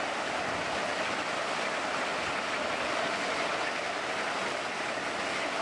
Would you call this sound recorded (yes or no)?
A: yes